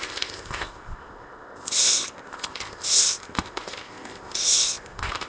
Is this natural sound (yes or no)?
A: no